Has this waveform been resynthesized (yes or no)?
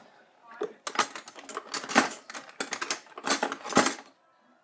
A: no